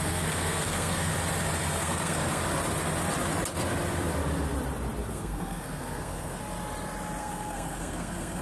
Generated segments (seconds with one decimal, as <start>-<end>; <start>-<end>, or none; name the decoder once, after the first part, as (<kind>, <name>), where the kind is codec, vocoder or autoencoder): 0.0-1.1 (codec, SNAC); 1.8-2.4; 5.1-6.4; 7.2-8.4